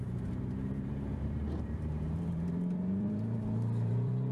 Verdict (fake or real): fake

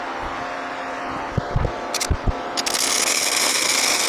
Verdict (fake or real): real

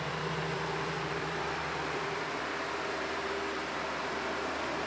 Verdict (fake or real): fake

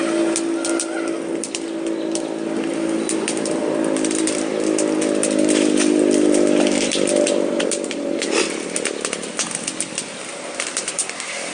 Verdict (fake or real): real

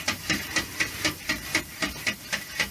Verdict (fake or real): fake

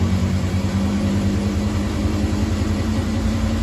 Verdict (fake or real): fake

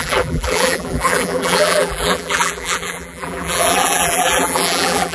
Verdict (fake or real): fake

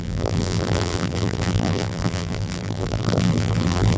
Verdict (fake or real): fake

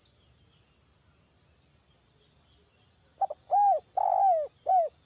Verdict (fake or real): real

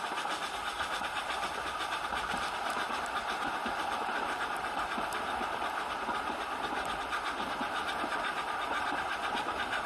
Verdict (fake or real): fake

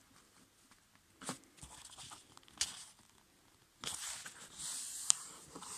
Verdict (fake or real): real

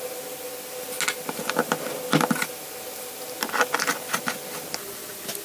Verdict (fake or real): real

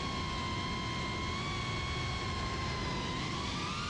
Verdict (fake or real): real